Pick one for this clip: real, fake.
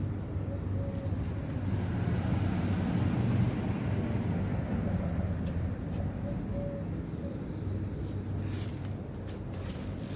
real